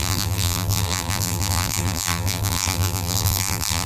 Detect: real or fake fake